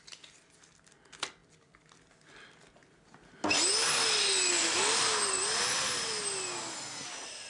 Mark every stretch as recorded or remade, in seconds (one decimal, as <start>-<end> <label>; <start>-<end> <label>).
0.0-7.5 recorded

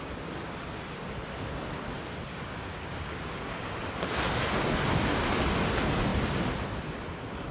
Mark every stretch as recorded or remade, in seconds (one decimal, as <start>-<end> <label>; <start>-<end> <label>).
0.0-2.3 recorded; 2.3-3.7 remade; 3.7-7.5 recorded

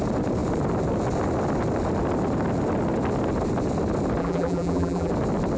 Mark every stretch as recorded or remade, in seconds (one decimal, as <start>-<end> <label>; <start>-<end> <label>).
0.0-4.2 recorded; 4.2-5.1 remade; 5.1-5.6 recorded

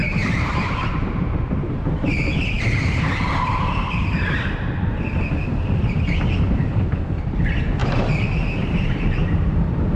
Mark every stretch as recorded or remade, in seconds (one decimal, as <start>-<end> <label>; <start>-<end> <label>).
0.0-4.5 remade; 4.5-7.8 recorded; 7.8-10.0 remade

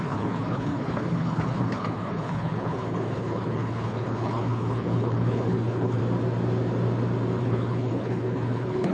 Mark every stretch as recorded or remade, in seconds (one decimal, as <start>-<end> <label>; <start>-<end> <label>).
0.0-6.0 remade; 6.0-7.4 recorded; 7.4-8.9 remade

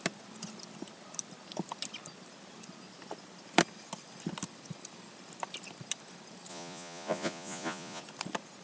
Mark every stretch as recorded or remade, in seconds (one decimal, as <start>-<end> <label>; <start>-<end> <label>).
0.0-6.5 recorded; 6.5-8.0 remade; 8.0-8.6 recorded

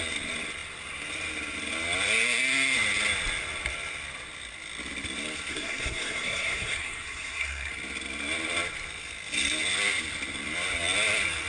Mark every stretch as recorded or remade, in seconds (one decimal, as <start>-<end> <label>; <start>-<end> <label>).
0.0-5.5 recorded; 5.5-7.7 remade; 7.7-11.5 recorded